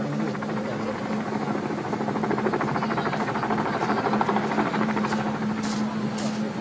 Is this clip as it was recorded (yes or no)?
yes